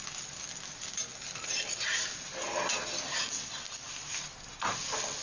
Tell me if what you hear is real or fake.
real